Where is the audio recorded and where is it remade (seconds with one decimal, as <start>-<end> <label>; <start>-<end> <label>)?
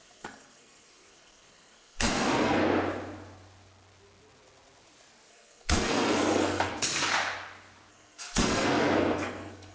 0.0-2.6 remade; 2.6-5.3 recorded; 5.3-6.7 remade; 6.7-7.9 recorded; 7.9-9.7 remade